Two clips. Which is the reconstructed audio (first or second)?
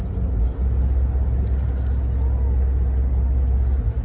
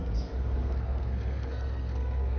second